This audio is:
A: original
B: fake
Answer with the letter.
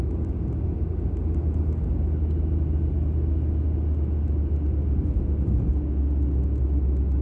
A